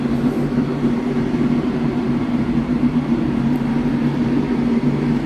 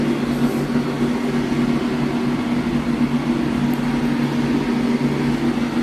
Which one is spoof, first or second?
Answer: first